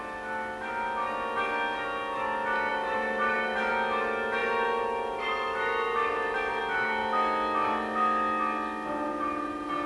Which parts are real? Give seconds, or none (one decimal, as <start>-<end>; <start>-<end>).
0.0-2.7; 3.7-4.4; 6.6-9.9